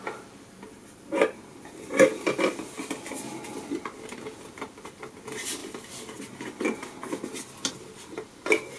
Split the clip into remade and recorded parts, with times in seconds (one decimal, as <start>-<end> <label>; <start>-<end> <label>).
0.0-8.8 recorded